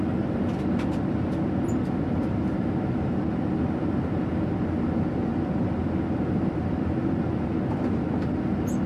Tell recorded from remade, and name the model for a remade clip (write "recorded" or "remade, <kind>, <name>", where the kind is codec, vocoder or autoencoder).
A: recorded